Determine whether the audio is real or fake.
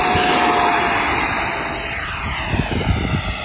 real